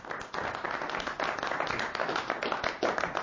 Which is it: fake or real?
real